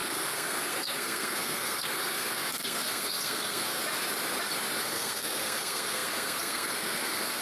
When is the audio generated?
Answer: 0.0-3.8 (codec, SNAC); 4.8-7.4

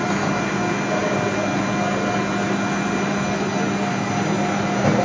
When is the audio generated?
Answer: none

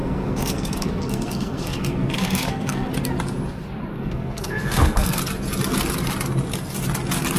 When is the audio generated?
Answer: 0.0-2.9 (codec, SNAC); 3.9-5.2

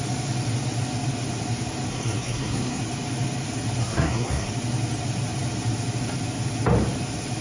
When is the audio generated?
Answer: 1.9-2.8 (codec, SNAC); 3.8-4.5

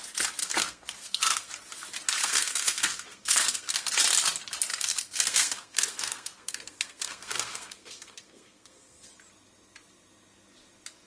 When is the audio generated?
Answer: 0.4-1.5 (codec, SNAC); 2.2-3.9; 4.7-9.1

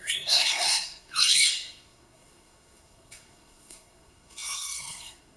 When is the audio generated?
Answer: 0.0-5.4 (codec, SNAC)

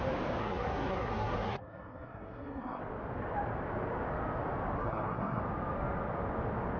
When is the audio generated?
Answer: 0.4-2.8 (codec, SNAC); 4.8-5.4